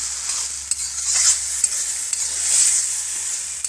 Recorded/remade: recorded